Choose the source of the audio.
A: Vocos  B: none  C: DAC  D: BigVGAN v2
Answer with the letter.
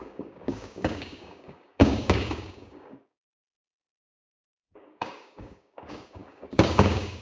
C